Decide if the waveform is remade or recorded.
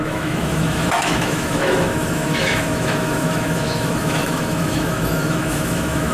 remade